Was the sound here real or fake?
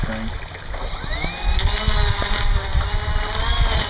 real